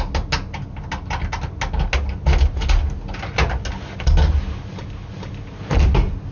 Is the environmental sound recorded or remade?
recorded